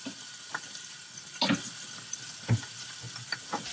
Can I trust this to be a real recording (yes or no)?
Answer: yes